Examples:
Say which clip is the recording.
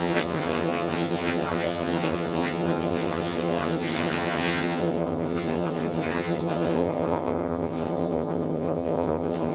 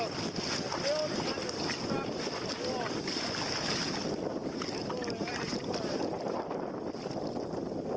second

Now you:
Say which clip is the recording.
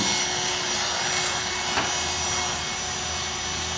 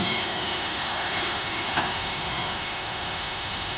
first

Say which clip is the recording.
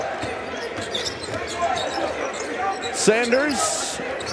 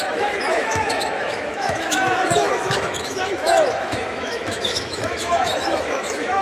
first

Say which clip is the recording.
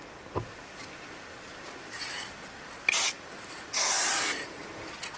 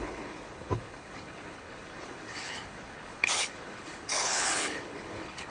first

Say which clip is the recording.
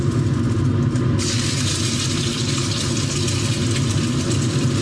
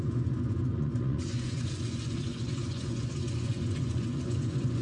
first